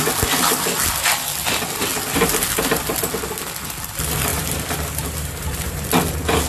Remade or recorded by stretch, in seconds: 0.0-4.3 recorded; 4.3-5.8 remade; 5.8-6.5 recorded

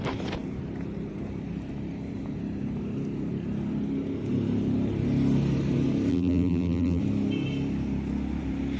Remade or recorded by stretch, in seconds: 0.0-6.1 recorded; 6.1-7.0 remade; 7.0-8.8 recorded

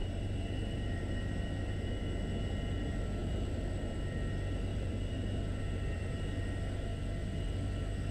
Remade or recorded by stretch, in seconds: 0.0-1.0 remade; 1.0-4.7 recorded; 4.7-6.4 remade; 6.4-8.1 recorded

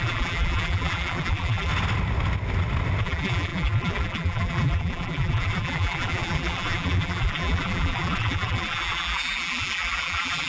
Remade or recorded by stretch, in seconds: 0.0-1.7 remade; 1.7-3.0 recorded; 3.0-10.5 remade

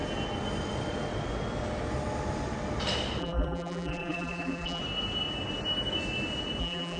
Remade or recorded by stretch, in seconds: 0.0-3.2 recorded; 3.2-4.8 remade; 4.8-6.6 recorded; 6.6-7.0 remade